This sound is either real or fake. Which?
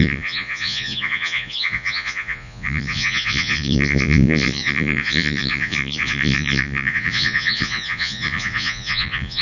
fake